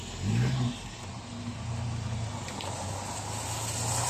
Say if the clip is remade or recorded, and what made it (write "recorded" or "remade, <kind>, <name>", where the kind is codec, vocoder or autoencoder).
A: recorded